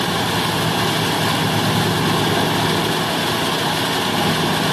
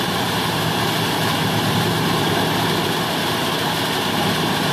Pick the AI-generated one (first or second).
second